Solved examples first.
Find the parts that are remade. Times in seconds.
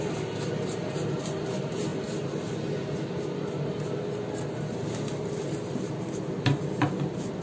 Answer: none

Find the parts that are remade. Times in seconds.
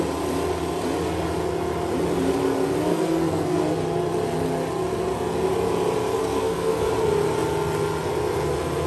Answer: 2.9-3.6 (codec, SNAC); 6.2-6.9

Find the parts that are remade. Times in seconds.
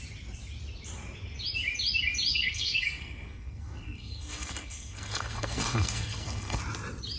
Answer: 2.3-6.6 (codec, SNAC)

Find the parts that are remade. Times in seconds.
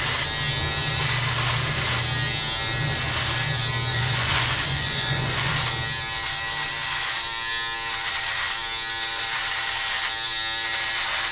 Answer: 3.9-5.5 (vocoder, Vocos)